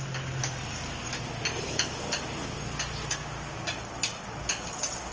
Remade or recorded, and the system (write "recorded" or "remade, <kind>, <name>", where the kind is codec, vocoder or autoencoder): recorded